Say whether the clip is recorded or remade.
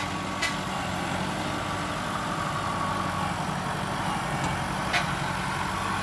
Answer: recorded